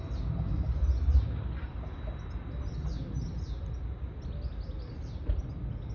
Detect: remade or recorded recorded